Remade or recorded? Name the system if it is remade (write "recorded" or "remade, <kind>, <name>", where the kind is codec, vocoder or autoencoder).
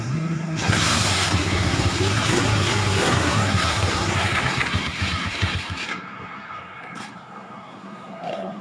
remade, codec, SNAC